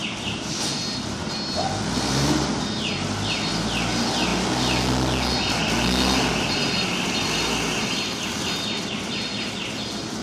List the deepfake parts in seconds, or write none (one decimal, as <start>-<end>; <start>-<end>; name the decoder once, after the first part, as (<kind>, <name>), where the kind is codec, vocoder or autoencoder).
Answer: none